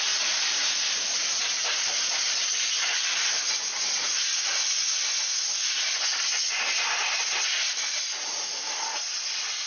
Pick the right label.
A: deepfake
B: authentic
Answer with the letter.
B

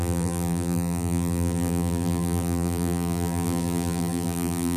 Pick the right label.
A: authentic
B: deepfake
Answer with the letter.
B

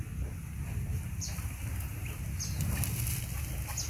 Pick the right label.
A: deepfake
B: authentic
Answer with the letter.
A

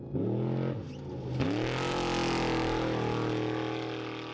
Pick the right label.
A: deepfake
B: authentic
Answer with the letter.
B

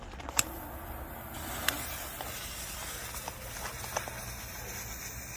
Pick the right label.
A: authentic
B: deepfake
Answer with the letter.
A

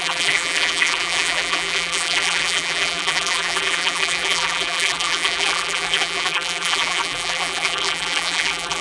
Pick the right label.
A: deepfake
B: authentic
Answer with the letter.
A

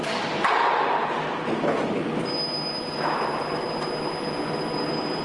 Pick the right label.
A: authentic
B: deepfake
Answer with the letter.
A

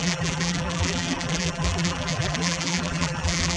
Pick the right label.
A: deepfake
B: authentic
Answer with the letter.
A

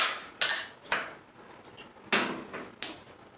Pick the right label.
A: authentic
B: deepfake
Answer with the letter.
A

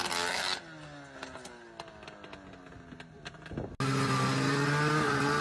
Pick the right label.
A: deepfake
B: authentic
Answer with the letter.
B